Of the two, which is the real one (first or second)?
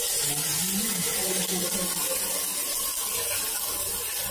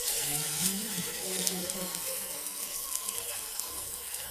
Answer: first